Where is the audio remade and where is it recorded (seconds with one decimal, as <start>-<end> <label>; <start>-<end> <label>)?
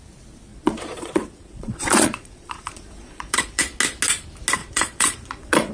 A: 0.0-0.5 recorded; 0.5-3.6 remade; 3.6-4.6 recorded; 4.6-5.7 remade